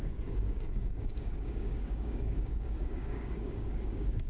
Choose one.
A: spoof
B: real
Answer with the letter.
A